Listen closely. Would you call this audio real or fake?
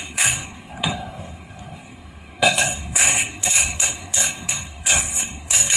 fake